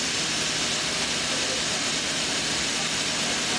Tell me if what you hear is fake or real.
real